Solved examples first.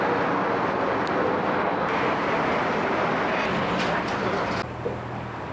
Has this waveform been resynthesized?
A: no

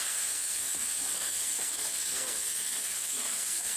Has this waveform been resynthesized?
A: yes